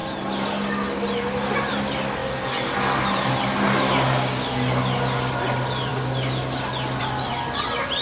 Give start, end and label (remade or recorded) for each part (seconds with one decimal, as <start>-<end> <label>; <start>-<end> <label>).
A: 0.0-8.0 recorded